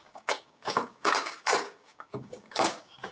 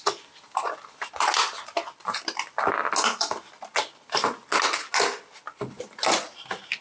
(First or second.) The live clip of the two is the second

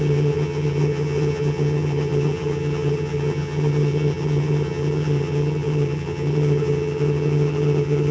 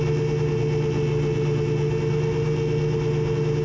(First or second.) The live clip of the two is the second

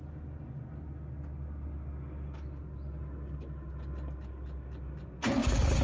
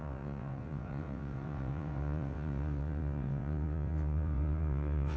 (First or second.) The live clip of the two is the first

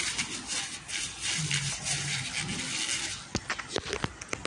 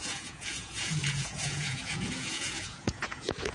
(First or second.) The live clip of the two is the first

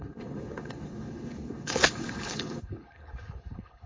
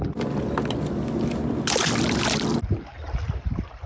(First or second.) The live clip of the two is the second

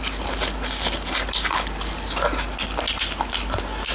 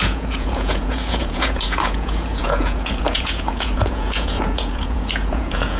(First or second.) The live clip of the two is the first